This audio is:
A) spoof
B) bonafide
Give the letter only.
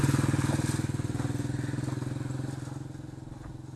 B